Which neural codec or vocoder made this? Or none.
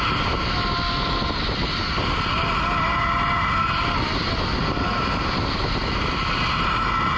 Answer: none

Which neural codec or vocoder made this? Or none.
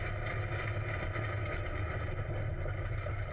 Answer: none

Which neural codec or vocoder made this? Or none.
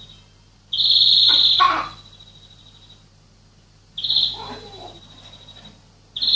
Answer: none